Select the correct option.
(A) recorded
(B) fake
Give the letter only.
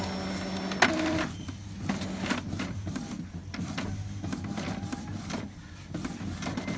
A